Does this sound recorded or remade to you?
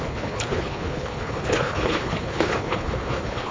remade